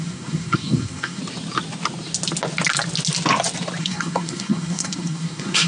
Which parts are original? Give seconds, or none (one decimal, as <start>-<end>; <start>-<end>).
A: 1.2-3.8